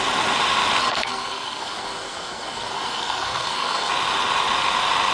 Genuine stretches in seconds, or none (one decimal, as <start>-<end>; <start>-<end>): 0.0-0.8; 3.9-5.1